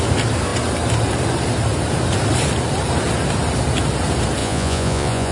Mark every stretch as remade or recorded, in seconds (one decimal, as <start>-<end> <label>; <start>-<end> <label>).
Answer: 0.0-4.4 recorded; 4.4-5.3 remade